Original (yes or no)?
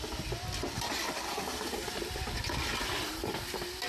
yes